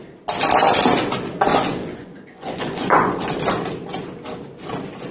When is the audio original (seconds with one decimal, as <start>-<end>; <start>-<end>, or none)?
0.0-1.5; 3.3-5.1